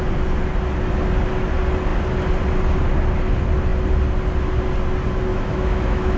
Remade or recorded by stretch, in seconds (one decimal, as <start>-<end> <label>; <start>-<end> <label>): 0.0-5.3 recorded; 5.3-6.2 remade

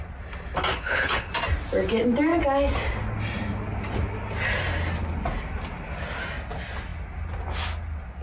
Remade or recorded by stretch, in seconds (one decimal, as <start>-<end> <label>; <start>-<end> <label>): 0.0-0.7 recorded; 0.7-1.3 remade; 1.3-8.2 recorded

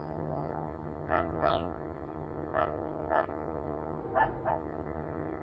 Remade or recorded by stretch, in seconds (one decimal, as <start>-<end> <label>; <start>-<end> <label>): 0.0-4.0 remade; 4.0-4.5 recorded; 4.5-5.4 remade

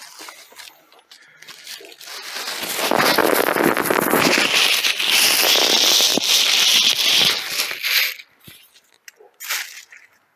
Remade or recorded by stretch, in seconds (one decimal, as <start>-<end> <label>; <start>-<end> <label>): 0.0-10.4 recorded

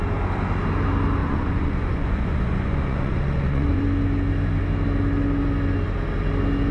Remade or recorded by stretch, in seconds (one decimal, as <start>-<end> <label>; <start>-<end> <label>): 0.0-1.2 recorded; 1.2-3.8 remade; 3.8-6.7 recorded